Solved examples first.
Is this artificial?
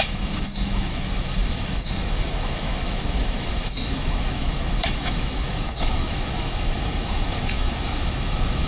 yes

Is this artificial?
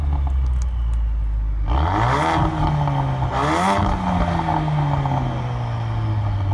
no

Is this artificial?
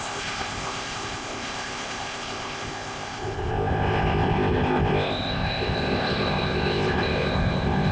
yes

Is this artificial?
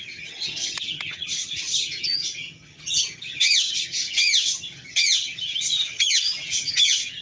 yes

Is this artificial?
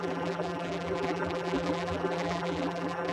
yes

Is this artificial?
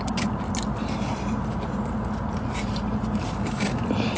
no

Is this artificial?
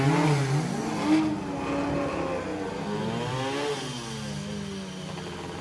no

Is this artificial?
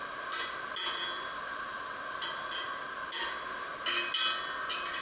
no